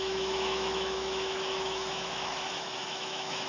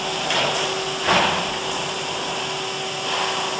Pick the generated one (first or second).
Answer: first